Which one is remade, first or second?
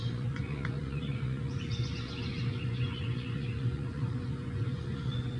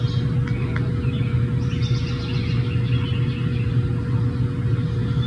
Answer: first